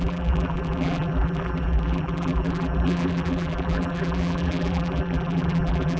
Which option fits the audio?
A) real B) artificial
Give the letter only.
B